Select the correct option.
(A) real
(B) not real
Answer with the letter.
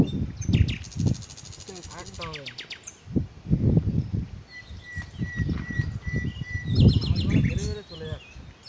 A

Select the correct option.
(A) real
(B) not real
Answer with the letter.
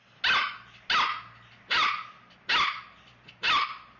A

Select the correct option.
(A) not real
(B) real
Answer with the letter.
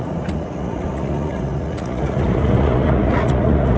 A